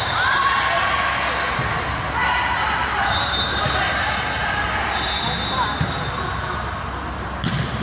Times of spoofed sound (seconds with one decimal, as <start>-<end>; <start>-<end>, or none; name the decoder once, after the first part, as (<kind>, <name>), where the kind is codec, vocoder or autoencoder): none